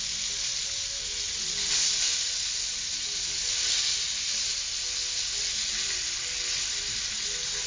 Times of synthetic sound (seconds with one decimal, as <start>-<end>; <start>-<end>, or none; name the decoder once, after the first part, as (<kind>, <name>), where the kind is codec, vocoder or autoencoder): none